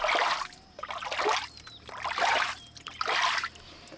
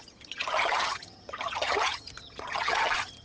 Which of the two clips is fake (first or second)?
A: second